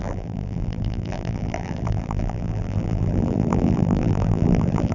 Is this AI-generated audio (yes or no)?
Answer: yes